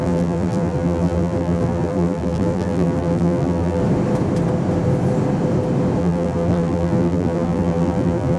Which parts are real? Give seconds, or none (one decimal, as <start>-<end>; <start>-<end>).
3.8-6.0